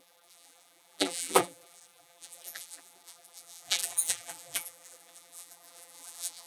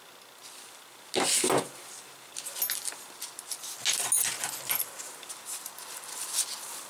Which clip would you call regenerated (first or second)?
first